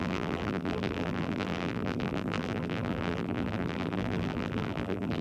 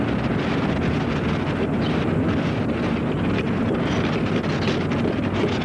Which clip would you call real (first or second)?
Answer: second